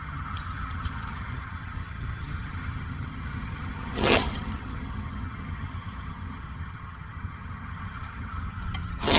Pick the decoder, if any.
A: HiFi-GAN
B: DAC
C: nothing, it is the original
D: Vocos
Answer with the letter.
A